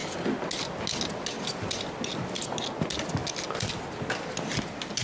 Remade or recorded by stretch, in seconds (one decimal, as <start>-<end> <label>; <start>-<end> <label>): 0.0-5.0 recorded